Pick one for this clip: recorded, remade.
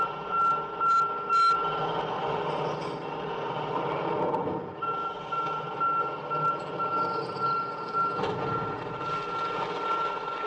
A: recorded